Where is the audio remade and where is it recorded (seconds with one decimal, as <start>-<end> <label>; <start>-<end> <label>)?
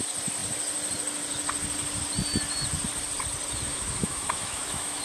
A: 0.0-3.7 recorded; 3.7-5.0 remade